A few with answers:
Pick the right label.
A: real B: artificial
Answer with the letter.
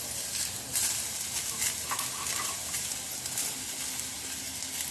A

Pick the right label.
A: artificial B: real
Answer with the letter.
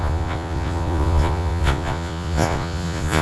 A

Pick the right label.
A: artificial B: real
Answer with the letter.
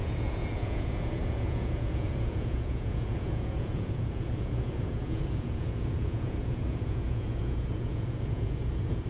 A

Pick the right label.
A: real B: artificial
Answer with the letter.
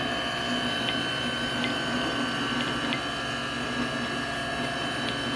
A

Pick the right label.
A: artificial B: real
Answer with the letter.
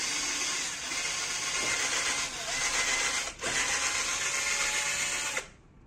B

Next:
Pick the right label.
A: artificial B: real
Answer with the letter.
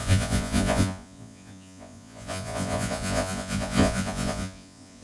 A